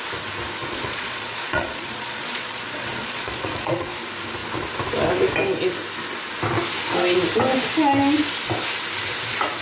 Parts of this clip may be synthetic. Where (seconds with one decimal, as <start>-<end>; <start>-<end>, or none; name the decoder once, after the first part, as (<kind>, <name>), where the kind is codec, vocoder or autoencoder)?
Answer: 0.6-3.9 (vocoder, Vocos)